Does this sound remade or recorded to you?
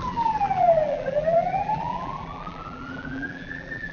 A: remade